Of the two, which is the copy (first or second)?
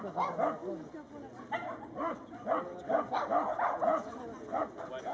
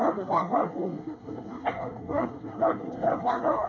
second